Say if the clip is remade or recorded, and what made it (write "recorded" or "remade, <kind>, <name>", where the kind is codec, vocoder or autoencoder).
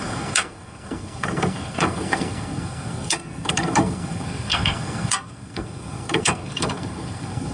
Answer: remade, codec, SNAC